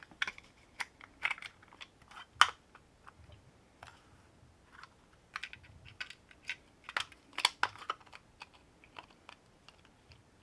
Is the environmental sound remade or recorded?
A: recorded